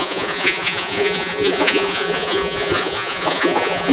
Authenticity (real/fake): fake